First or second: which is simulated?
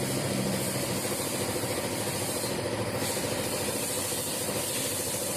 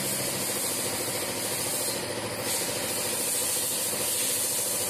first